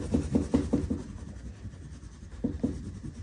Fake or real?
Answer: real